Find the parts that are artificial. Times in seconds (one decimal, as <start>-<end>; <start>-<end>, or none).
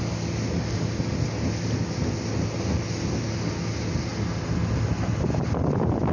none